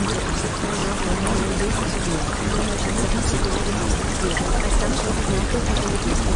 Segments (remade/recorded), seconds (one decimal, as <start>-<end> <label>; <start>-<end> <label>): 0.0-6.4 recorded